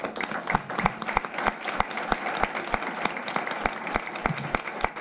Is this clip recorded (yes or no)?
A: yes